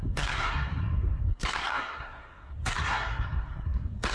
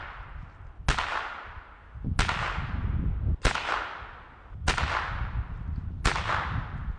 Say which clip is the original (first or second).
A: second